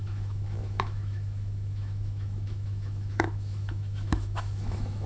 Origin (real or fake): fake